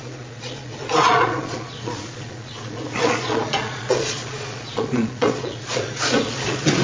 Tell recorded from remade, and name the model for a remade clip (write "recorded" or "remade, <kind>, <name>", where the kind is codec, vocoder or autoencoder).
remade, vocoder, Vocos